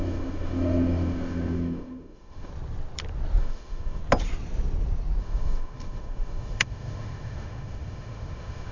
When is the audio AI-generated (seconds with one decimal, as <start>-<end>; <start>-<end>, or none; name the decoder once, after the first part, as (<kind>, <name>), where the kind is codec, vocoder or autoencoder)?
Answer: 0.0-2.5 (autoencoder, DAC-VAE); 3.4-4.0; 5.2-8.7